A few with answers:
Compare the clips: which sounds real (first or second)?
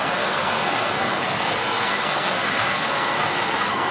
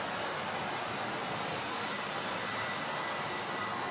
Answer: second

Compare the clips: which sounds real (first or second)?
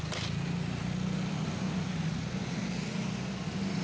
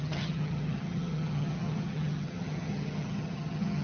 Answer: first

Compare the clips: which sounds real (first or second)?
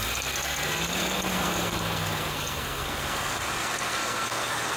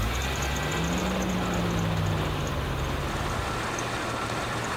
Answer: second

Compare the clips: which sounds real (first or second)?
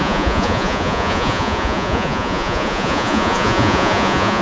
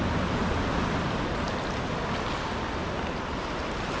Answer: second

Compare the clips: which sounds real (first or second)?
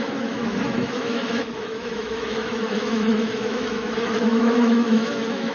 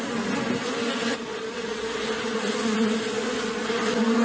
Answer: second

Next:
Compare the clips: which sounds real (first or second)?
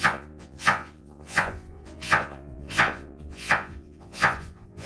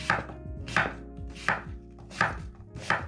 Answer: second